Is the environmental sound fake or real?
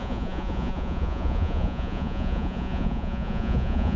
fake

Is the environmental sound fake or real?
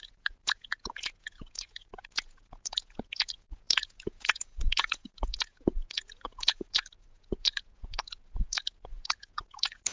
fake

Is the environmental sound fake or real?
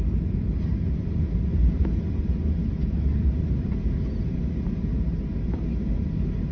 fake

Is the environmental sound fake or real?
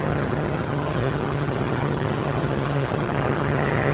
fake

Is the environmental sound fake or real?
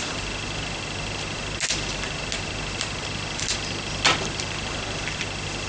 real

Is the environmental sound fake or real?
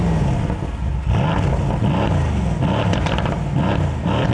real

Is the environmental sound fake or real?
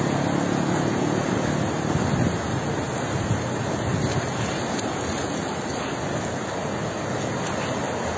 real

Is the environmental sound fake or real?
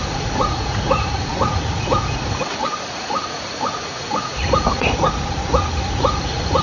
fake